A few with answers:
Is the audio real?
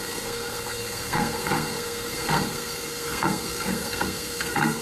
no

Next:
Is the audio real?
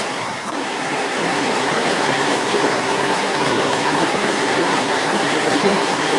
no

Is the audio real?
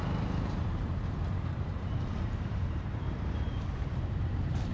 no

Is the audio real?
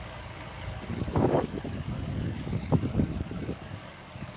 no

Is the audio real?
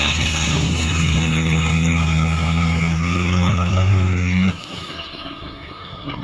no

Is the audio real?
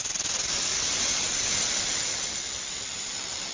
yes